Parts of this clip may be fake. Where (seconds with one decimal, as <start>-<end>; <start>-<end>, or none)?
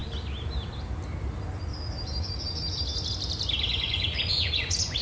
3.7-5.0